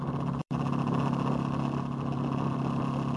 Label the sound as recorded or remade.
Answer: recorded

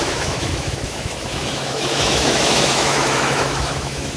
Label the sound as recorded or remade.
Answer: remade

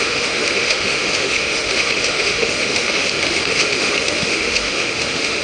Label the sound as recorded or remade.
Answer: remade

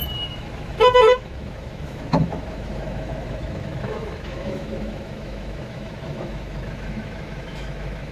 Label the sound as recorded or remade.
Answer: remade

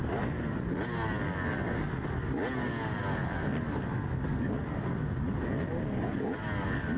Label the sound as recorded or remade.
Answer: recorded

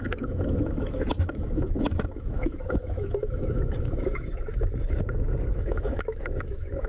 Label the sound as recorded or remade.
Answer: remade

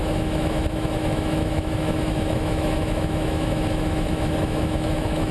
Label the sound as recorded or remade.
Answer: remade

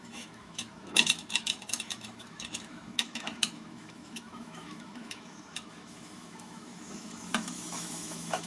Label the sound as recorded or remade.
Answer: remade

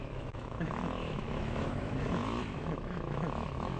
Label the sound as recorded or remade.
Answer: remade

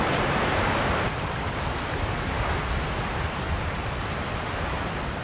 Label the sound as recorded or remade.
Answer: recorded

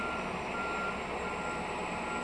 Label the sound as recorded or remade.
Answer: recorded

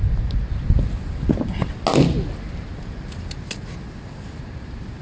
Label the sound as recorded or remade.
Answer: recorded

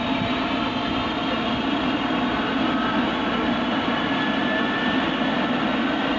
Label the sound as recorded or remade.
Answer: recorded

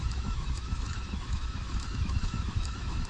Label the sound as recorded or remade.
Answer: remade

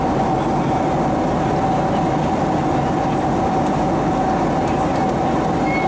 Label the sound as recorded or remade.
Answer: recorded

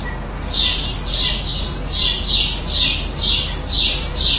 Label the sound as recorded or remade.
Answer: recorded